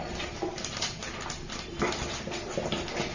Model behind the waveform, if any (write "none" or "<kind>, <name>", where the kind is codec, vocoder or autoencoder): none